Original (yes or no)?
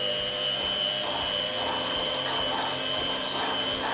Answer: yes